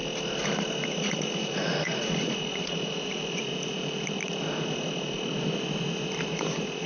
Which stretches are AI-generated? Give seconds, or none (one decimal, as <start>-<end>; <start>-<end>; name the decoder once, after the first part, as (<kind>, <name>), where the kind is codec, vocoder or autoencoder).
0.9-3.5 (vocoder, Vocos); 6.2-6.9